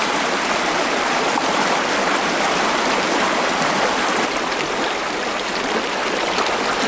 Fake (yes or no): no